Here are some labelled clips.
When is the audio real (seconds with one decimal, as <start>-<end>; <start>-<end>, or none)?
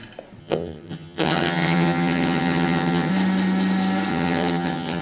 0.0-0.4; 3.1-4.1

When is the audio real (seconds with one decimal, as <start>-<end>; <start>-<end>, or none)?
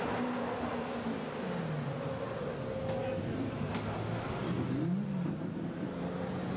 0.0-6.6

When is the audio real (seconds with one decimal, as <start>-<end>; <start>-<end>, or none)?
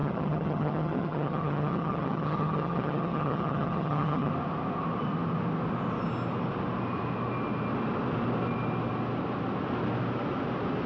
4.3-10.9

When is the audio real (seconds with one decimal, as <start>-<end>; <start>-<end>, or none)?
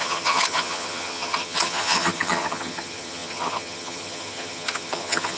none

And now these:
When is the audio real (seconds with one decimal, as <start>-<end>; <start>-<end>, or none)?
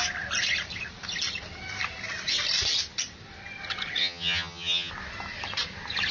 0.0-4.0; 4.9-6.1